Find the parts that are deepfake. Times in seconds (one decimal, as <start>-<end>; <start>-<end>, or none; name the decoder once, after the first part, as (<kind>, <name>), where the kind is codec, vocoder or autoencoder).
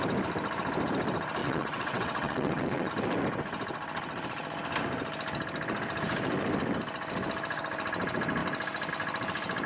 1.4-2.9 (vocoder, WaveNeXt)